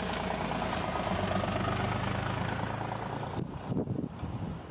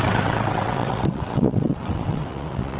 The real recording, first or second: first